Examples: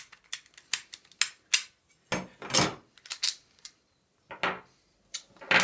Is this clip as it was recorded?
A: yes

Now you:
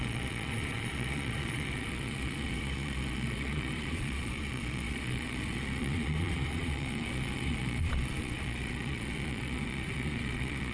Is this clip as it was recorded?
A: no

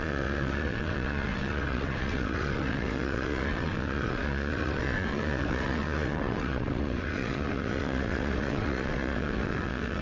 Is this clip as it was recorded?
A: no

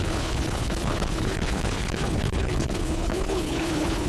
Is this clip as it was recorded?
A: no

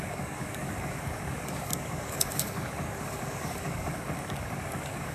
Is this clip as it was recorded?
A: no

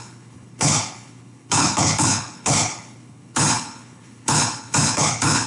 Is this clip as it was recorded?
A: no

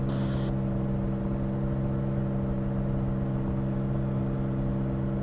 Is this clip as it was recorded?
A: yes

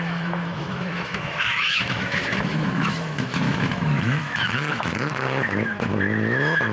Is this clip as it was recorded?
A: no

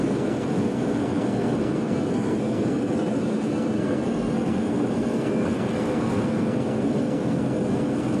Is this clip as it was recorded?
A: no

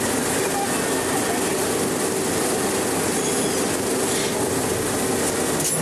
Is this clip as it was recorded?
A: yes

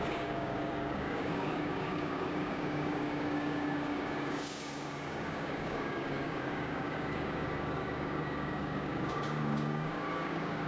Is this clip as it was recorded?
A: no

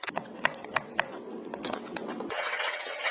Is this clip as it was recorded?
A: no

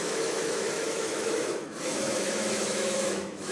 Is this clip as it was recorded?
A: no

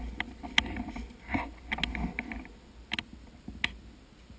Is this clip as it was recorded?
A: yes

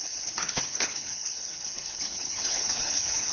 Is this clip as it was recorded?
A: no